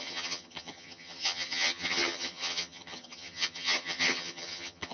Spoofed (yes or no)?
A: yes